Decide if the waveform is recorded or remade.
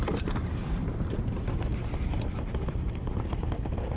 recorded